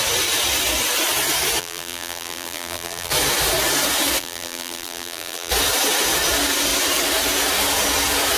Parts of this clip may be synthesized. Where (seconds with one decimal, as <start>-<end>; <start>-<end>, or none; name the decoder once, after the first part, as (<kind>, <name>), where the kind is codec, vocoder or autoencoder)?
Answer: 1.6-3.1 (vocoder, BigVGAN v2); 4.2-5.5

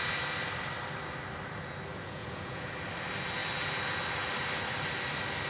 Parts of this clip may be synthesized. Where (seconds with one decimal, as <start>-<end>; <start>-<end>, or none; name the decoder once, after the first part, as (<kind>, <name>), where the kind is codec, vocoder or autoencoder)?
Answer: 1.9-2.7 (vocoder, Vocos)